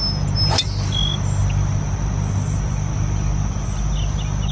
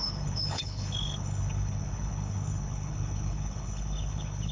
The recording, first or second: first